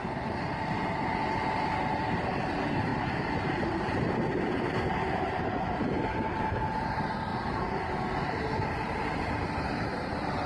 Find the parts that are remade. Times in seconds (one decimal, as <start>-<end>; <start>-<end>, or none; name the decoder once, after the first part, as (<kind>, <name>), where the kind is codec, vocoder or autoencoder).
1.0-2.9 (vocoder, BigVGAN v2); 3.4-7.3; 8.2-10.5